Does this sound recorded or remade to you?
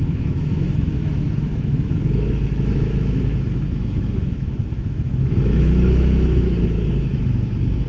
remade